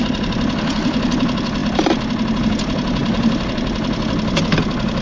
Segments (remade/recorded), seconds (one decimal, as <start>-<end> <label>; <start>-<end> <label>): 0.0-5.0 recorded